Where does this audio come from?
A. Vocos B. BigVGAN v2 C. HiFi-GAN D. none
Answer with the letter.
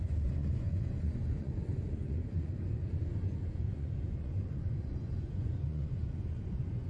A